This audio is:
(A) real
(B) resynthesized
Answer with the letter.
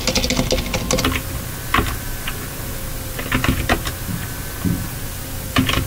A